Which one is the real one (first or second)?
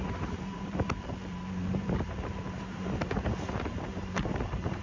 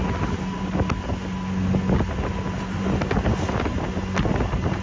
second